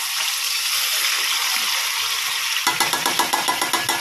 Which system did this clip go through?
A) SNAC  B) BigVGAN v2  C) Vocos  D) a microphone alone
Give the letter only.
D